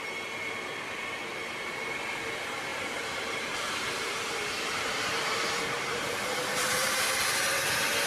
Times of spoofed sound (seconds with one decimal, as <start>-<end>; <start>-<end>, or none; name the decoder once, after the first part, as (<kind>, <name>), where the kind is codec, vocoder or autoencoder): 2.7-7.0 (vocoder, BigVGAN v2)